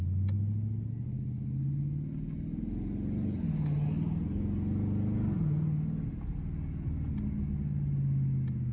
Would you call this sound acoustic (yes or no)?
yes